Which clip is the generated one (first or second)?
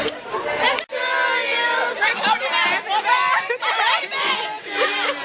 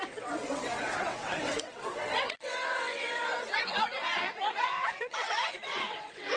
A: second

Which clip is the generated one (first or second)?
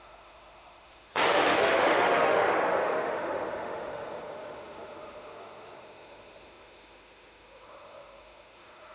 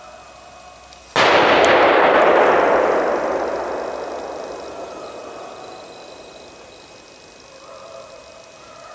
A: first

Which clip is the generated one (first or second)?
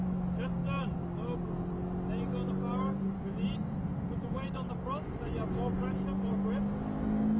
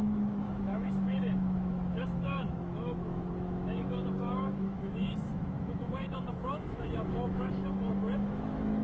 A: second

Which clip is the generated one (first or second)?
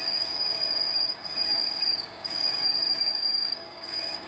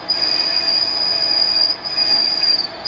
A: first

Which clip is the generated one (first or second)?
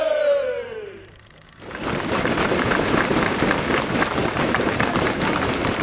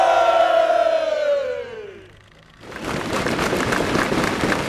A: first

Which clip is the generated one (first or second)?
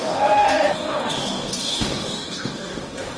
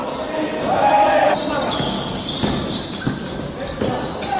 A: first